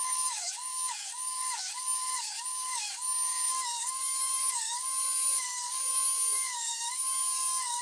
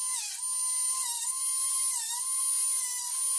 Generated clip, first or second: first